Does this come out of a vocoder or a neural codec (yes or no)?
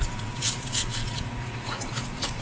yes